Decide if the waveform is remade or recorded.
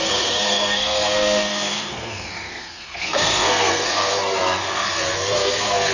remade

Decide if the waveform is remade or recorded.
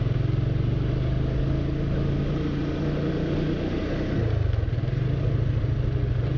recorded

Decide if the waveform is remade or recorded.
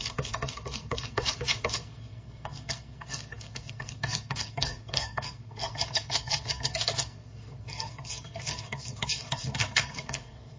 remade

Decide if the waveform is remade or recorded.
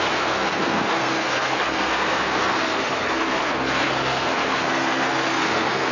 remade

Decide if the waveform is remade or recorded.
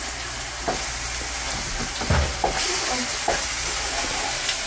recorded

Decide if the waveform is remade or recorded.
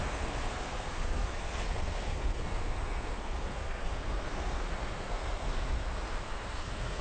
remade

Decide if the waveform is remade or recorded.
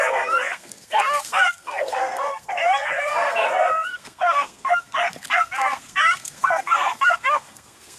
remade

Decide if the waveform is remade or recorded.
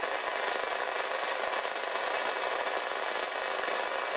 recorded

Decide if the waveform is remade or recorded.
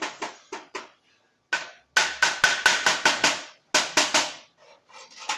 recorded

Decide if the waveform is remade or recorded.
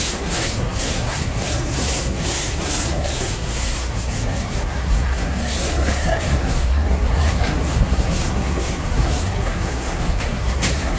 remade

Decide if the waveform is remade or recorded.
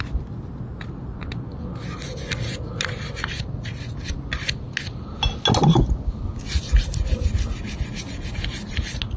recorded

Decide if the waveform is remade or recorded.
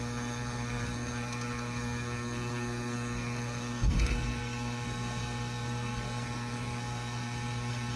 remade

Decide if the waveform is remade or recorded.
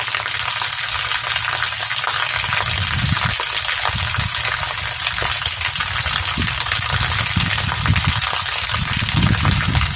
recorded